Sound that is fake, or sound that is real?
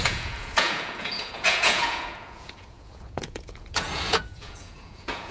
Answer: fake